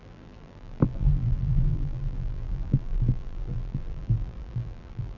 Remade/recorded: remade